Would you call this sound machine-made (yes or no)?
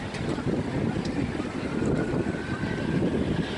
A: no